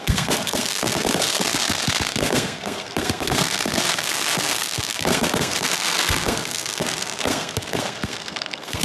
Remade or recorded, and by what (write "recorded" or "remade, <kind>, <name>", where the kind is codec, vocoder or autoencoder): remade, codec, SNAC